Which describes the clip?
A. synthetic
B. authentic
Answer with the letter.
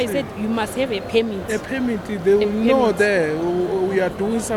B